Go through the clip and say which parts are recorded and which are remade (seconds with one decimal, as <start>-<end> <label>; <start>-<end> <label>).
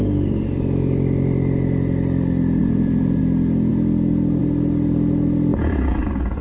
0.0-2.6 recorded; 2.6-3.2 remade; 3.2-5.5 recorded; 5.5-6.4 remade